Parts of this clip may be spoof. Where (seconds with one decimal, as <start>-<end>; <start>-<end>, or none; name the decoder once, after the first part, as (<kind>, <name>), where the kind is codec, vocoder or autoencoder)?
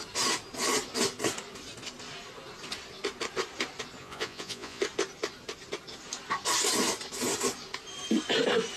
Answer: 4.0-4.8 (vocoder, Vocos)